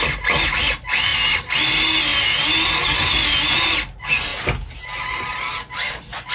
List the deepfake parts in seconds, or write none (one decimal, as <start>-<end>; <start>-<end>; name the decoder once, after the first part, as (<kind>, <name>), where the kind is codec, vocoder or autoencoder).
none